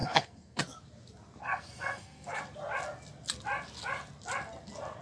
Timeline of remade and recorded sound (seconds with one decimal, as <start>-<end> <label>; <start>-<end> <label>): 0.0-0.6 remade; 0.6-1.4 recorded; 1.4-2.4 remade; 2.4-5.0 recorded